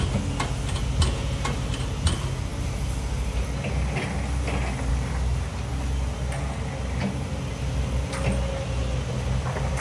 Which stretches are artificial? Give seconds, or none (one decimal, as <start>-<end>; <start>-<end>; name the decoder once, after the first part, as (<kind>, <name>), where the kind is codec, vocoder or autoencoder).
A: 8.8-9.8 (vocoder, BigVGAN v2)